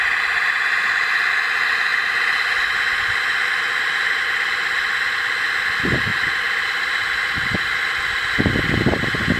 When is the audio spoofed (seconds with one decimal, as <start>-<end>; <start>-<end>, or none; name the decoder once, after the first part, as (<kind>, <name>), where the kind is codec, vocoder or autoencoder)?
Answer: 6.1-8.0 (vocoder, BigVGAN v2)